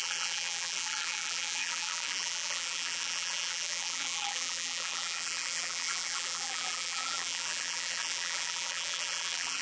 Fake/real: fake